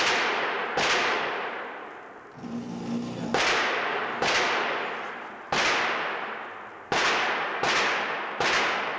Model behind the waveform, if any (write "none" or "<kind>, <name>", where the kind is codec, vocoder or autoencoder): none